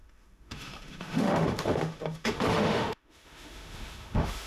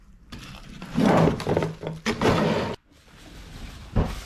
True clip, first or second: second